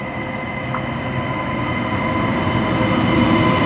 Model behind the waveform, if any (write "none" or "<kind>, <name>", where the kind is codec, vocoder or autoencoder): none